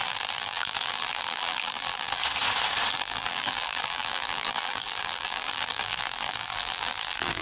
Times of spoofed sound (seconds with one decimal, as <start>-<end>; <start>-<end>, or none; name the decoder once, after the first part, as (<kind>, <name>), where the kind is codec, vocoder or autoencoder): 0.0-2.2 (vocoder, BigVGAN v2); 2.9-7.4